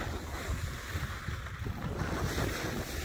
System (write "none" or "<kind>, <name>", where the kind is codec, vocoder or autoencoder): none